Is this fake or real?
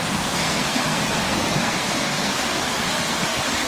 fake